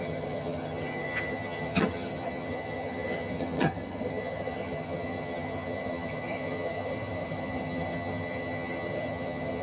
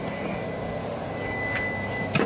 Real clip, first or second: second